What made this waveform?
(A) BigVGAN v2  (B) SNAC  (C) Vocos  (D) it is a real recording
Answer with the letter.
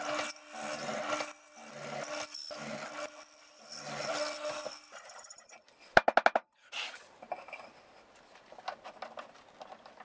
D